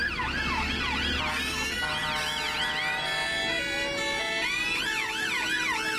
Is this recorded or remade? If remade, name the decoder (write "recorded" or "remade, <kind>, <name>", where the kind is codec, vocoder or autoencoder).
recorded